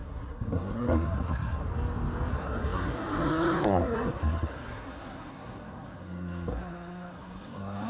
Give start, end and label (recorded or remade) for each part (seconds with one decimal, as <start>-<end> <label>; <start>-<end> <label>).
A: 0.0-1.7 remade; 1.7-2.3 recorded; 2.3-7.9 remade